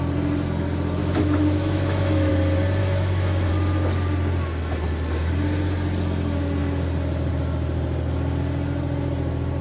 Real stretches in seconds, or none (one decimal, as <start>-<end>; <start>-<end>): 0.0-1.0; 2.3-2.8; 3.5-9.6

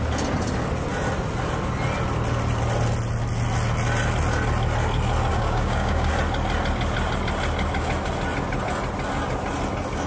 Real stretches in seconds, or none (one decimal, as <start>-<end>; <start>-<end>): 0.0-5.3; 6.1-10.1

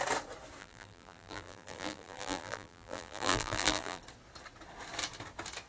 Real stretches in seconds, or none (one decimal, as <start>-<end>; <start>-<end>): 0.0-0.6; 4.0-5.7

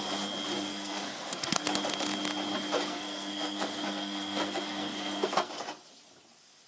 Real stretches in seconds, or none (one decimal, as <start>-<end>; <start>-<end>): 0.0-0.7; 1.6-2.9; 5.5-6.7

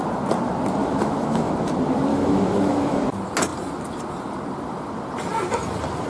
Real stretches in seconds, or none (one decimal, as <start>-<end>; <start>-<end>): 0.0-0.8; 1.5-2.1; 3.0-6.1

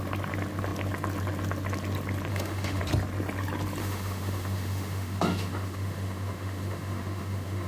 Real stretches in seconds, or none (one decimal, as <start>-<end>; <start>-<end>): 0.0-2.3; 2.8-3.8

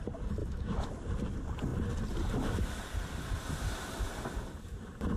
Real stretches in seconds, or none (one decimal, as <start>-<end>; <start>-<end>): 0.0-0.4; 0.9-5.2